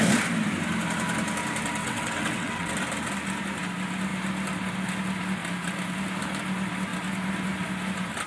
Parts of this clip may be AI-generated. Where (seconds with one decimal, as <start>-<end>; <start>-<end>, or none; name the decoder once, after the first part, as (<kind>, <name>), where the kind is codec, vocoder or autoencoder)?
1.8-2.7 (vocoder, WaveNeXt)